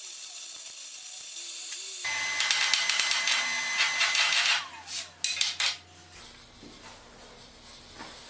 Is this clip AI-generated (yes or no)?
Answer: no